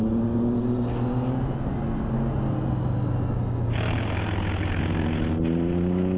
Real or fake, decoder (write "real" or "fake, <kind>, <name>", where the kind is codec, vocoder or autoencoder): real